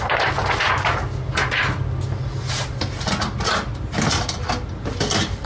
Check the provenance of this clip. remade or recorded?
recorded